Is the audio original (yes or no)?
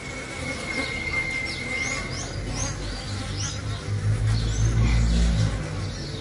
yes